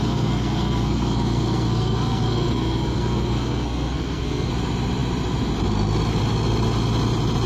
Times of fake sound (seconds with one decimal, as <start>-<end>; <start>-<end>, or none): 0.0-4.5